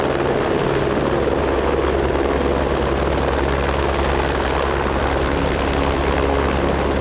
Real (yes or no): yes